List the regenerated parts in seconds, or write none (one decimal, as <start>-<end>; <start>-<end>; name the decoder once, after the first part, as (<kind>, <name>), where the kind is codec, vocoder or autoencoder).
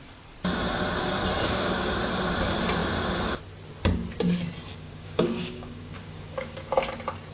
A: 1.4-1.9 (codec, DAC); 4.7-6.6